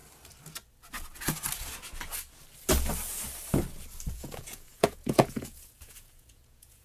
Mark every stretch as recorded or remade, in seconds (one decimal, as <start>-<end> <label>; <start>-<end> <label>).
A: 0.0-4.1 recorded; 4.1-6.8 remade